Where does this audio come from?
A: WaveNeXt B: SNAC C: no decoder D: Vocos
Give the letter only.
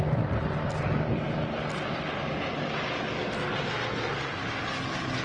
C